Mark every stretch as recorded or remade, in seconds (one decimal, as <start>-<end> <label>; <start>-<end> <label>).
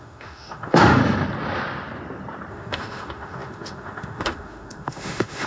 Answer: 0.0-1.0 remade; 1.0-2.5 recorded; 2.5-5.5 remade